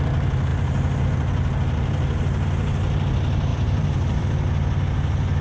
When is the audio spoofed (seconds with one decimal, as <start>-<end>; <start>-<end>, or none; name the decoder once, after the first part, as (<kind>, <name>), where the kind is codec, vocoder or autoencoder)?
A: 3.5-4.2 (vocoder, BigVGAN v2)